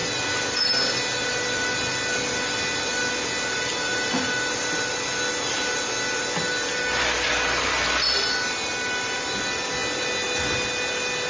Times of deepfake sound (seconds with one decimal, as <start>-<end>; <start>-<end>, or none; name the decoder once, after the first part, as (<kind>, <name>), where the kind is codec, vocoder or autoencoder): none

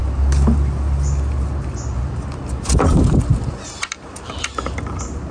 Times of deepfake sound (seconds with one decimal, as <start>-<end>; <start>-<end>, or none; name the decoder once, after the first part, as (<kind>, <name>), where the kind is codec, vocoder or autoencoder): none

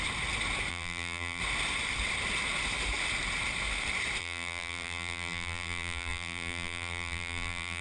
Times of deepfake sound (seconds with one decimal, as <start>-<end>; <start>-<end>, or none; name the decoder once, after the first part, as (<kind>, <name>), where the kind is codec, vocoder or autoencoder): 0.7-1.4 (vocoder, BigVGAN v2); 4.2-7.8

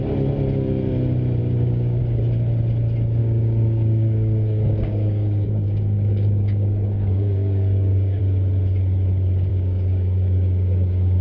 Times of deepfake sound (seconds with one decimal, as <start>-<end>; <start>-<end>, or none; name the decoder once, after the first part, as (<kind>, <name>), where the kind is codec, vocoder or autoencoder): 1.4-2.0 (codec, DAC); 3.2-8.2; 9.5-11.2

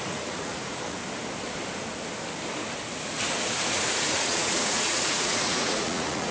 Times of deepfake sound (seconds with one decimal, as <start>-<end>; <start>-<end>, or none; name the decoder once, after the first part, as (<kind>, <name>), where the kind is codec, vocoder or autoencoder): 0.0-1.0 (vocoder, Vocos); 3.9-6.3

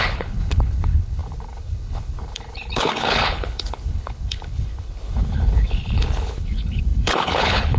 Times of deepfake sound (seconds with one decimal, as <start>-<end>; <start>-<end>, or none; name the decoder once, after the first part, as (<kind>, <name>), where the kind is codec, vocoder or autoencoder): 0.0-7.8 (codec, HILCodec)

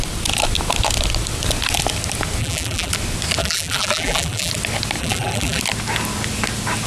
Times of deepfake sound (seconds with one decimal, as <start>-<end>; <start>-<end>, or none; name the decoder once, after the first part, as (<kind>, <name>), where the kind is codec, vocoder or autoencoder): 2.4-2.9 (vocoder, BigVGAN v2); 3.4-4.5; 5.0-5.6

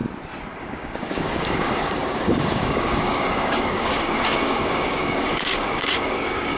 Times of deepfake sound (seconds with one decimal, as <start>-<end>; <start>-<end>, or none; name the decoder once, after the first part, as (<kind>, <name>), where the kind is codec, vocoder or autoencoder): 0.6-6.6 (codec, DAC)